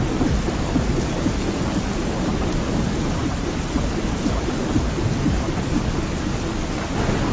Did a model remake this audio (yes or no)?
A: no